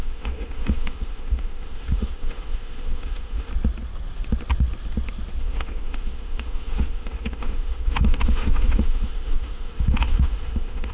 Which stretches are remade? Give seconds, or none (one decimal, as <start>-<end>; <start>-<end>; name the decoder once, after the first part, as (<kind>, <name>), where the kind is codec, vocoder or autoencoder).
0.0-3.5 (autoencoder, DAC-VAE); 5.4-10.9